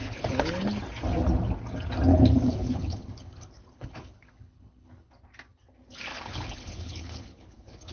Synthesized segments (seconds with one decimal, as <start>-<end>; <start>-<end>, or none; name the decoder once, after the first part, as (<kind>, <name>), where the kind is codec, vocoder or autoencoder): 0.0-0.8 (codec, HILCodec); 2.1-5.1; 6.1-7.9